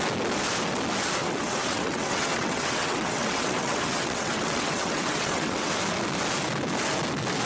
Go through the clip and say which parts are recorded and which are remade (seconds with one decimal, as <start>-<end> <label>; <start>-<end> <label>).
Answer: 0.0-1.2 recorded; 1.2-5.7 remade; 5.7-7.5 recorded